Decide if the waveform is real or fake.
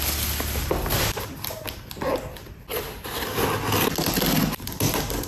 real